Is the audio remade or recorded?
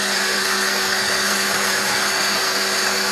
remade